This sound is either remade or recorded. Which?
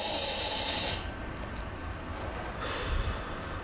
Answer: recorded